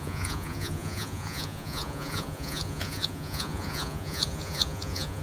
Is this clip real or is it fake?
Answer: fake